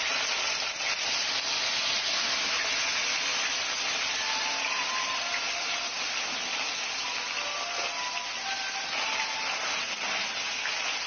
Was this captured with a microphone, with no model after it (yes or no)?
yes